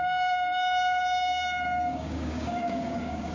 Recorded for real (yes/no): no